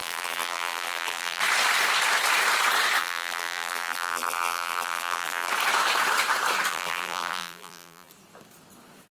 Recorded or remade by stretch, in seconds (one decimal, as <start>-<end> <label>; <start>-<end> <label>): 0.0-1.4 remade; 1.4-3.0 recorded; 3.0-5.5 remade; 5.5-6.7 recorded; 6.7-8.1 remade; 8.1-9.1 recorded